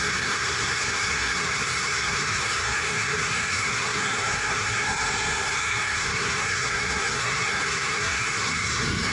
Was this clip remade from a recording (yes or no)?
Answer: yes